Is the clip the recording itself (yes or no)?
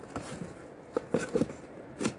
yes